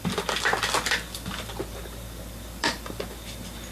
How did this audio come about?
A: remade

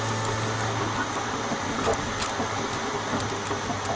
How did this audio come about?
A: recorded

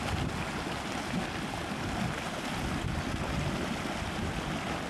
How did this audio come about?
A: recorded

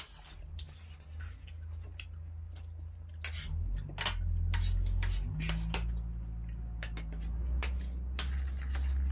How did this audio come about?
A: recorded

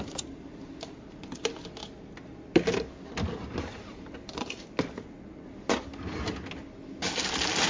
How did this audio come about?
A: recorded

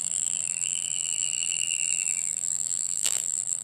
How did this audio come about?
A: remade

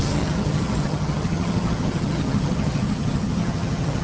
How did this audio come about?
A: remade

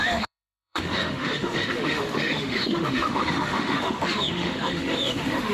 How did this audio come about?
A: remade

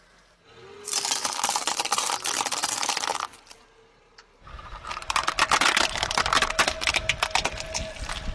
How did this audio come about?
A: recorded